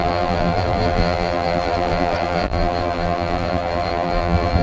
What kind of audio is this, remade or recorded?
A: remade